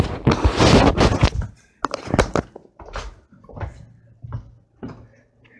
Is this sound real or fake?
real